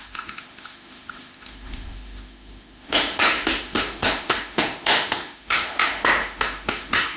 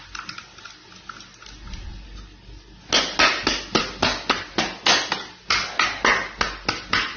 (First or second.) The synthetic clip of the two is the first